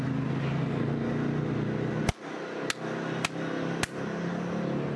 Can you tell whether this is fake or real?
real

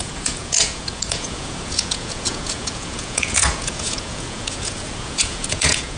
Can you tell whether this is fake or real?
fake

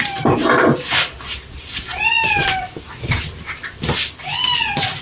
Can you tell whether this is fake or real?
real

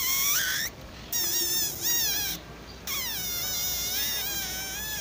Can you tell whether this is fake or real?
real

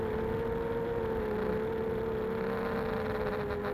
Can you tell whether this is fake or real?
real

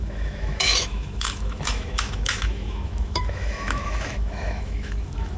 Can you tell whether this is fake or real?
fake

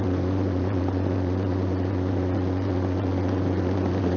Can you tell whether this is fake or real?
fake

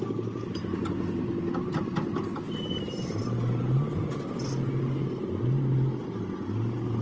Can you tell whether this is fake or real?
real